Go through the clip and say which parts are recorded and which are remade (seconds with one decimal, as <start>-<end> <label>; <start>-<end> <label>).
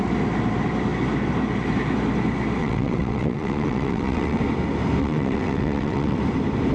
0.0-2.6 recorded; 2.6-4.4 remade; 4.4-5.0 recorded; 5.0-6.2 remade; 6.2-6.7 recorded